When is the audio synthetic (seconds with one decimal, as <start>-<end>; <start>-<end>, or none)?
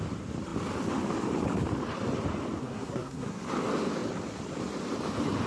2.6-3.4